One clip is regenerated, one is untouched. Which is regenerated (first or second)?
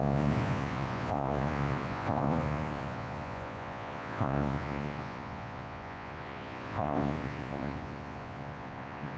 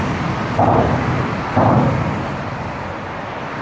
first